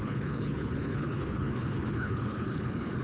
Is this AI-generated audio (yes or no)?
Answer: yes